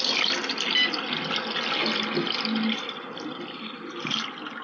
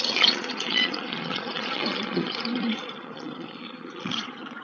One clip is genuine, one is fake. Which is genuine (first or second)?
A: first